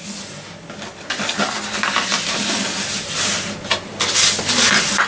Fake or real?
real